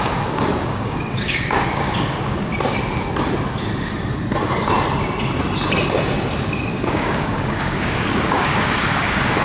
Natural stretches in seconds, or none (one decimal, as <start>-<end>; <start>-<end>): 2.5-6.7